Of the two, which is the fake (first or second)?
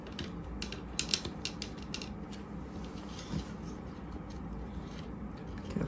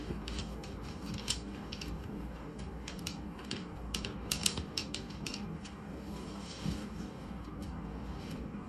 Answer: second